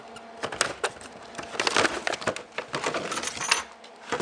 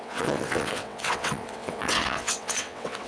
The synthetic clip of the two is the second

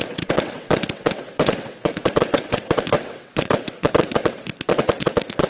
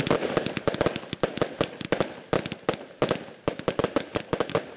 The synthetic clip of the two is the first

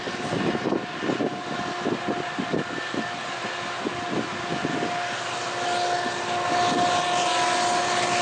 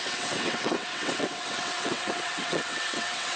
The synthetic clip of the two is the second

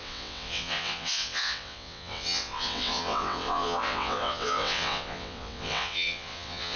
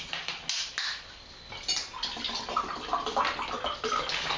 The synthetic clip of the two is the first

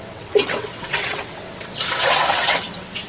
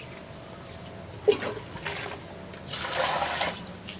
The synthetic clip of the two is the first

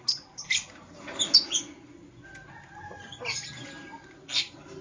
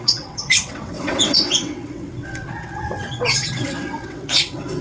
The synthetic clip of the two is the second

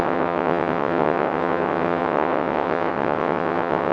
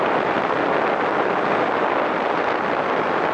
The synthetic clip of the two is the first